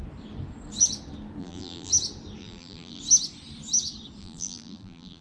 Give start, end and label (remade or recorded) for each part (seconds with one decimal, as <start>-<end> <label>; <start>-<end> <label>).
0.0-1.4 recorded; 1.4-1.9 remade; 1.9-2.4 recorded; 2.4-3.0 remade; 3.0-4.2 recorded; 4.2-5.2 remade